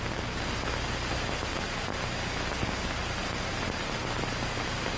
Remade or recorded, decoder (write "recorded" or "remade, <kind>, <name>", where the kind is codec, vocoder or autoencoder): recorded